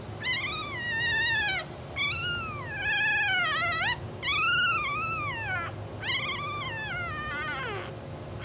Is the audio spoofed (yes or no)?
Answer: no